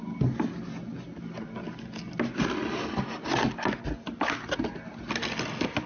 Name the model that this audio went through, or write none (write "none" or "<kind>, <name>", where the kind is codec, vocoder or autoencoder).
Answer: none